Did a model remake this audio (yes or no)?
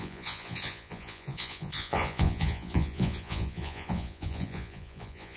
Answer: yes